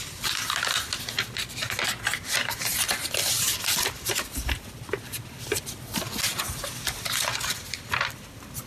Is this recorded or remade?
remade